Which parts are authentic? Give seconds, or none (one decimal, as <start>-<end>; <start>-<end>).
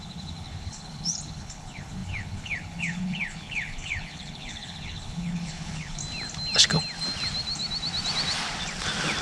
6.0-9.2